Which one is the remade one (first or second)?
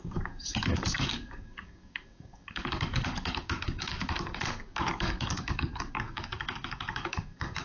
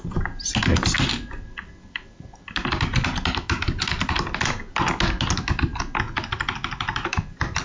first